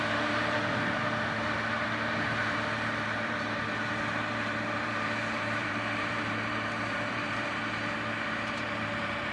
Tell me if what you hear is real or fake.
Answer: fake